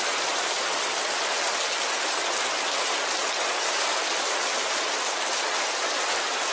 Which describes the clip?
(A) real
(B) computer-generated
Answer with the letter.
A